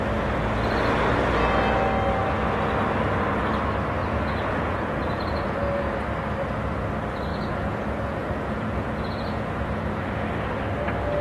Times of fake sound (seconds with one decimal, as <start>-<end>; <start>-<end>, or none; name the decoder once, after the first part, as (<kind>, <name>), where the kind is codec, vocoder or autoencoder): 4.0-5.8 (vocoder, Vocos); 7.3-10.5